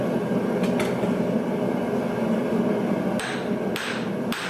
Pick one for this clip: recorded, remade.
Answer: recorded